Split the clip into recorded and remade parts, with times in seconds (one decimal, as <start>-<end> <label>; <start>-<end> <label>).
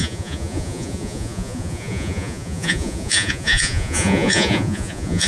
0.0-5.3 remade